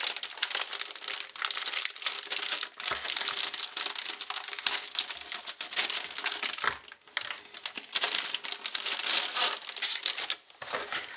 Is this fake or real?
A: real